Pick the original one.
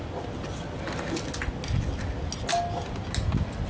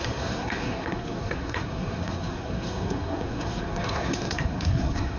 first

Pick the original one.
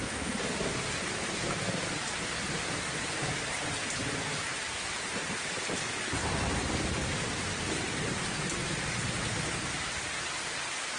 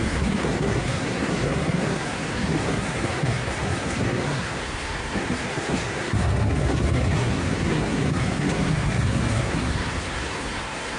first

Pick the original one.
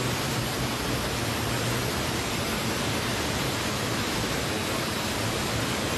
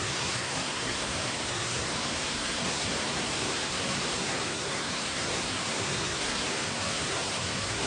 first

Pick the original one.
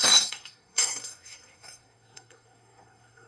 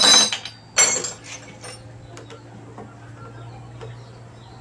second